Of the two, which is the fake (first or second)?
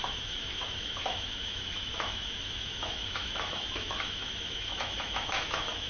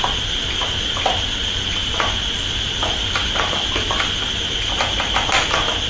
first